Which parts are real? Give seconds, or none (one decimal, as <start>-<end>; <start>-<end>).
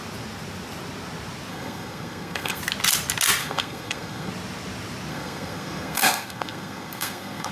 0.0-1.5; 2.6-3.4; 4.3-5.1